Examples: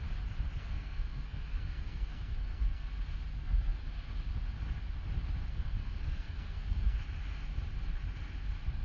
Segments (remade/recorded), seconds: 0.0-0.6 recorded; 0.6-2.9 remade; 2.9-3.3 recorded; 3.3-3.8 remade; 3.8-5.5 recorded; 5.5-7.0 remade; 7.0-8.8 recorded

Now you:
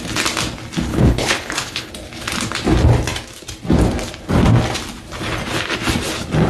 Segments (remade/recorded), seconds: 0.0-0.9 recorded; 0.9-1.9 remade; 1.9-6.5 recorded

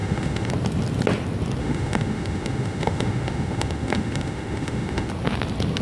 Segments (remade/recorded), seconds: 0.0-0.5 remade; 0.5-1.6 recorded; 1.6-5.1 remade; 5.1-5.8 recorded